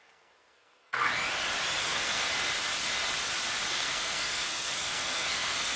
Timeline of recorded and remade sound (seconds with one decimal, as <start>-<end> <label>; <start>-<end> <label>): 0.0-1.1 remade; 1.1-1.8 recorded; 1.8-2.3 remade; 2.3-3.7 recorded; 3.7-5.8 remade